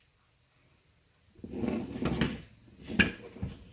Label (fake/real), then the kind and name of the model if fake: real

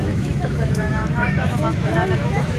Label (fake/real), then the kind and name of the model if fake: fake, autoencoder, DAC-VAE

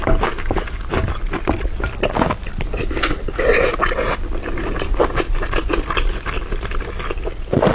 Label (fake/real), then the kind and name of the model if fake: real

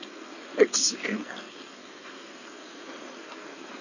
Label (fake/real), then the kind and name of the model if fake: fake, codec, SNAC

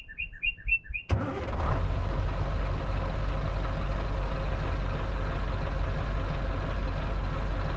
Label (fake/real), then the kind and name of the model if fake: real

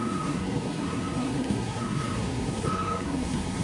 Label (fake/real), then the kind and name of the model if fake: fake, codec, SNAC